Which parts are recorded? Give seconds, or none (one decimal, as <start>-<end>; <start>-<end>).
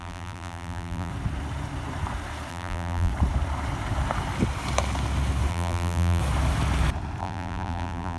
1.1-2.5; 3.1-5.5; 6.2-7.2